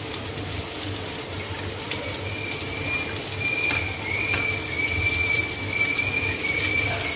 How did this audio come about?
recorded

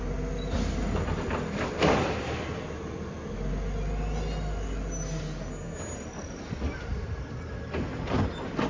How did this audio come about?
recorded